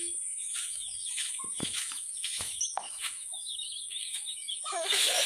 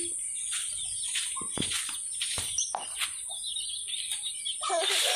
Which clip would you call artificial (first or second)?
first